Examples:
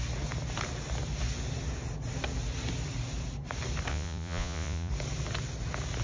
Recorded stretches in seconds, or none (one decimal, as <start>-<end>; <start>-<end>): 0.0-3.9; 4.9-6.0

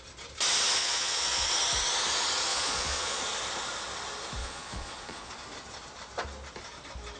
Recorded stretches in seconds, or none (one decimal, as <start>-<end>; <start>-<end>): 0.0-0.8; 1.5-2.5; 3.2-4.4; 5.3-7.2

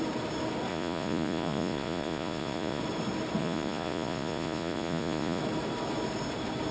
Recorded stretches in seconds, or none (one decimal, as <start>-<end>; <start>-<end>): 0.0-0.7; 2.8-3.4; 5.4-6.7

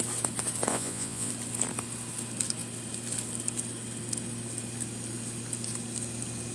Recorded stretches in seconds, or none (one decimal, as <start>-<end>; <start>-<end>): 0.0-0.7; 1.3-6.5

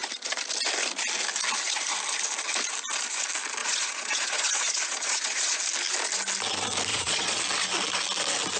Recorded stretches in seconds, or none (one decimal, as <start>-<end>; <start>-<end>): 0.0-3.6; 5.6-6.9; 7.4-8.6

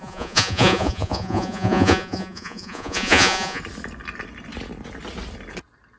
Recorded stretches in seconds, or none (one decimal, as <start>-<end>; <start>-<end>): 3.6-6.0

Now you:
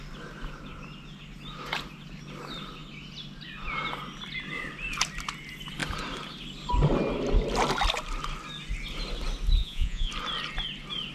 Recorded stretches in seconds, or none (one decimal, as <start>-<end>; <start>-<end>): 0.0-9.6; 10.1-11.1